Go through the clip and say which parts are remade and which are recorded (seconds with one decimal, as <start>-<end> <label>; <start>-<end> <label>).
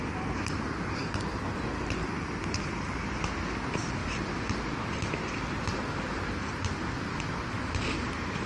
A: 0.0-8.5 recorded